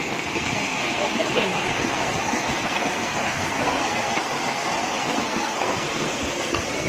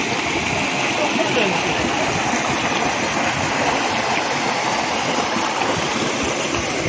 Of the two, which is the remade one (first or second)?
first